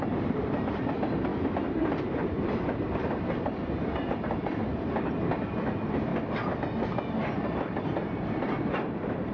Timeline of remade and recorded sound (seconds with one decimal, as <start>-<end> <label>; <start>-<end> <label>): 0.0-1.3 remade; 1.3-2.0 recorded; 2.0-6.1 remade; 6.1-7.5 recorded; 7.5-9.3 remade